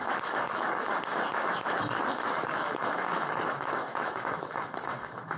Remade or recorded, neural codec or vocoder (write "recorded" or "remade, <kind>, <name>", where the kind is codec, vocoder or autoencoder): remade, autoencoder, DAC-VAE